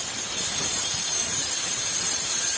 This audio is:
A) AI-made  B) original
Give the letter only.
A